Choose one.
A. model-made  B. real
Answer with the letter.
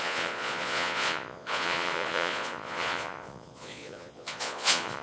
A